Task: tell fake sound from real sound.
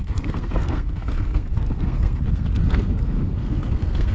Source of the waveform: fake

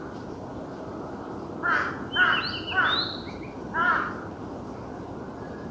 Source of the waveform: real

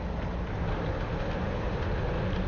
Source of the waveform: real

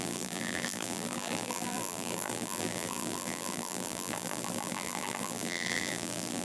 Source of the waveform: fake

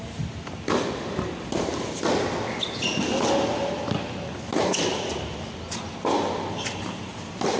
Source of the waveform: real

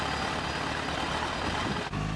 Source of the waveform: real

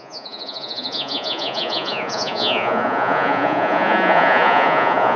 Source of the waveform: fake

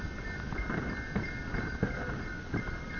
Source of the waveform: real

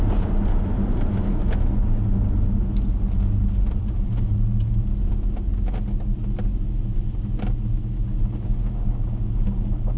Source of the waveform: real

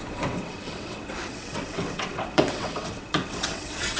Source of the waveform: fake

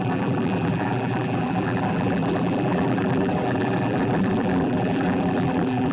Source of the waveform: fake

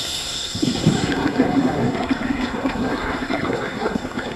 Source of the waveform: fake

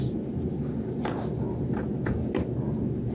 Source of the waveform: real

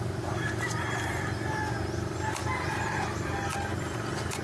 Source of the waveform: real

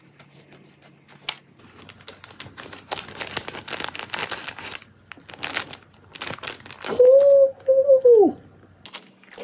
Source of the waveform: real